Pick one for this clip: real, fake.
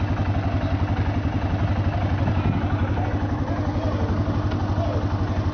real